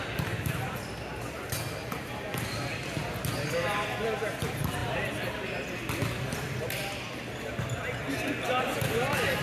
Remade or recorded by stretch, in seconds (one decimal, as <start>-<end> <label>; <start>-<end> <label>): 0.0-9.4 recorded